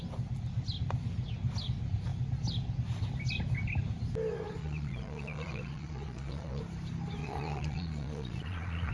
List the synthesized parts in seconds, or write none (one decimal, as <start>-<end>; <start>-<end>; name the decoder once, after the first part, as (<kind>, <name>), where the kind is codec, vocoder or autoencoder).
4.6-6.6 (vocoder, Vocos); 7.2-8.9